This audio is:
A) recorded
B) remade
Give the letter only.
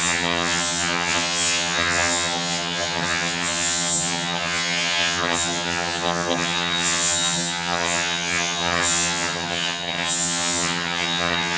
B